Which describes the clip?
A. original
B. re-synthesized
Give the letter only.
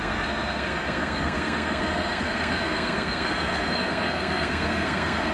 B